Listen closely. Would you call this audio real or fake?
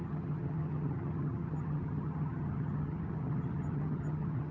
fake